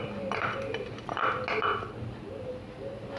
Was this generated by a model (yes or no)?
no